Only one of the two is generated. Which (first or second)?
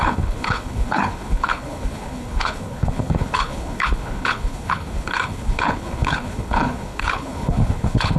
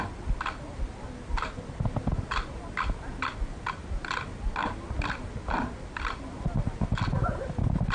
first